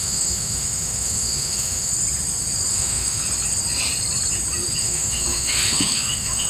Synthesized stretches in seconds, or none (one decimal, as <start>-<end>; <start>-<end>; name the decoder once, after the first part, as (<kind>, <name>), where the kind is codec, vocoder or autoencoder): 0.0-1.9 (autoencoder, DAC-VAE); 2.7-3.2; 4.8-6.5